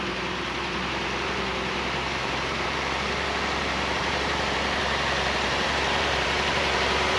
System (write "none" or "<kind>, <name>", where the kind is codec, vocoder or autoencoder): vocoder, BigVGAN v2